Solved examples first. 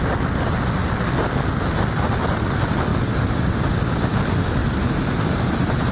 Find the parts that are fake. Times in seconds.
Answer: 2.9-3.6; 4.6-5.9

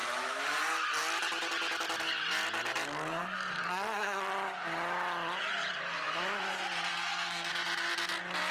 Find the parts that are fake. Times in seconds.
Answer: 3.2-4.3; 6.9-7.5

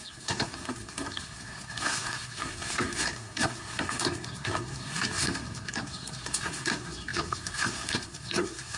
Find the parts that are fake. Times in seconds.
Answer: 0.0-8.8

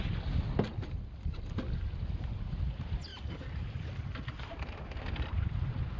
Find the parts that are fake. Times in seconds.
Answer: none